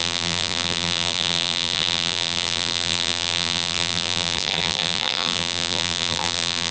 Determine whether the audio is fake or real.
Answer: fake